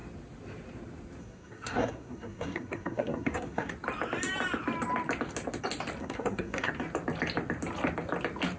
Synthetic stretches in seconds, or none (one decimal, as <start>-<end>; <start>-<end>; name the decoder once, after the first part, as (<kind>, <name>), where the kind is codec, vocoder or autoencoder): 1.2-3.7 (codec, SNAC); 6.0-6.7